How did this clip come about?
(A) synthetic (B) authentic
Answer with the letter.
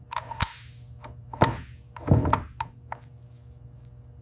B